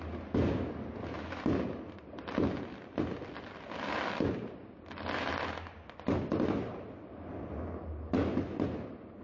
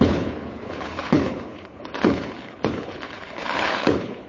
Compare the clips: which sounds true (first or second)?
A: first